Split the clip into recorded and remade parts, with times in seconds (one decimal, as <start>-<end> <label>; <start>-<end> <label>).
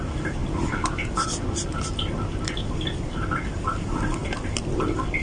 0.0-5.2 recorded